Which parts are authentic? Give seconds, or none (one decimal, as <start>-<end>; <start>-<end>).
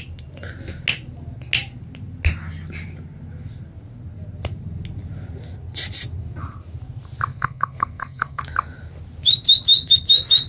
0.0-7.3; 8.4-10.5